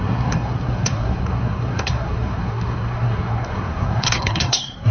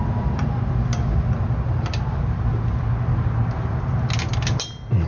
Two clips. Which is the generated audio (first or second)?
first